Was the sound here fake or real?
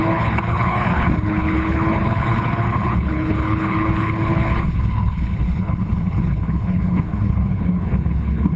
fake